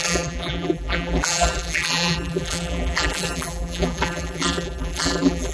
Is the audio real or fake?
fake